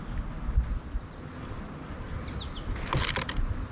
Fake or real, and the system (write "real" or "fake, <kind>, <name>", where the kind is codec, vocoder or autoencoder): real